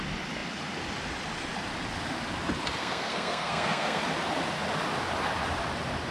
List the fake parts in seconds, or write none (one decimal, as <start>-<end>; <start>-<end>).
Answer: 2.8-4.0

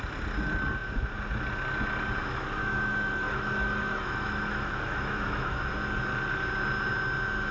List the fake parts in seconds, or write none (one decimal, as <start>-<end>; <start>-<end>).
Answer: 2.6-5.7

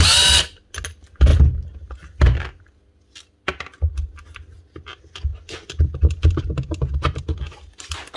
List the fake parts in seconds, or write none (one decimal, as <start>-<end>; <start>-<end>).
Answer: none

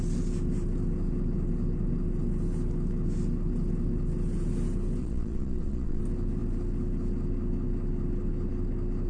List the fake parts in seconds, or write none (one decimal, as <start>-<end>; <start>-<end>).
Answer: 5.0-6.0

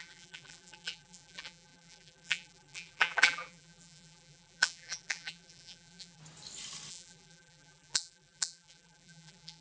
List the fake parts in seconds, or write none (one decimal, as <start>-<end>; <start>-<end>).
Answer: 0.0-6.2; 6.9-9.6

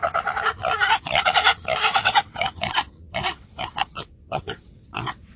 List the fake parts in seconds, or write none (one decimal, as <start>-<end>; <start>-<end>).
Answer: 1.9-5.4

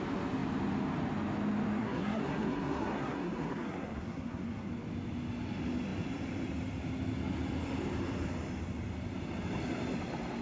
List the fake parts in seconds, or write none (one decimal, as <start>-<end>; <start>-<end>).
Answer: 1.8-4.7

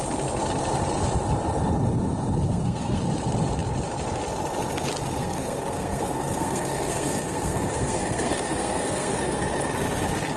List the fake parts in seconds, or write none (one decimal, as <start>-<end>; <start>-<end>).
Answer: 2.5-3.0; 5.2-9.4